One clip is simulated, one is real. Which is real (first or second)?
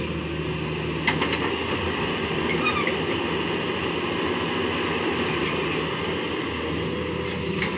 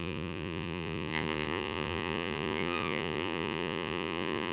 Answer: first